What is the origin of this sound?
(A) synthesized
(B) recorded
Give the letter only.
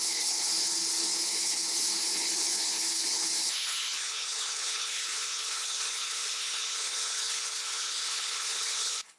A